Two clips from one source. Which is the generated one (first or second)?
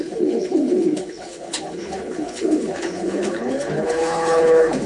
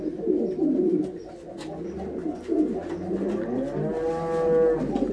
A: first